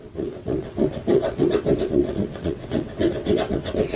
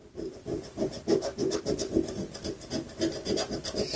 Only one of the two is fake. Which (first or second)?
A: first